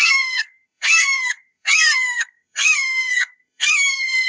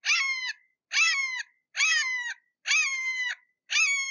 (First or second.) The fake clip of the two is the first